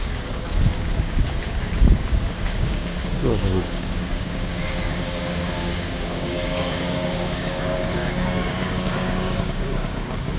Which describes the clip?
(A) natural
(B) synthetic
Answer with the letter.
B